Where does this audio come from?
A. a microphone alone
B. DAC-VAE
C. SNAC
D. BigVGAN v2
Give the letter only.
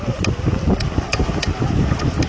A